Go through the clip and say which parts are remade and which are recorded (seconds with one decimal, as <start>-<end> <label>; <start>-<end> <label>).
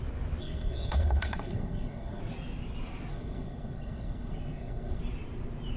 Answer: 0.0-0.4 recorded; 0.4-2.2 remade; 2.2-3.1 recorded; 3.1-5.0 remade; 5.0-5.8 recorded